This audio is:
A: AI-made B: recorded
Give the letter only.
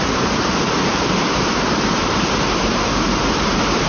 A